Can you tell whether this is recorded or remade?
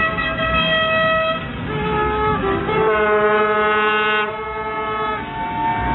recorded